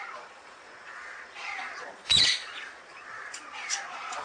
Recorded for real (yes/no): no